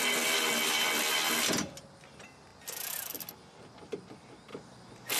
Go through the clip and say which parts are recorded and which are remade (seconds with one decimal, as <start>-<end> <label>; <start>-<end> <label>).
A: 0.0-2.5 recorded; 2.5-3.3 remade; 3.3-5.2 recorded